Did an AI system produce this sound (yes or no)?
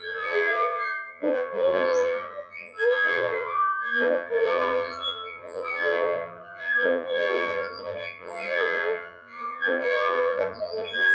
yes